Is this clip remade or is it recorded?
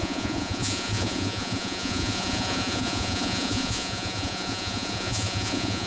remade